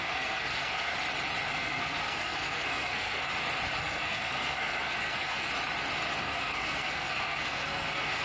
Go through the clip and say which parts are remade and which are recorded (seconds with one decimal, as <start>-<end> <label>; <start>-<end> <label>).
0.0-0.9 remade; 0.9-1.5 recorded; 1.5-3.3 remade; 3.3-3.8 recorded; 3.8-5.5 remade; 5.5-6.2 recorded; 6.2-8.2 remade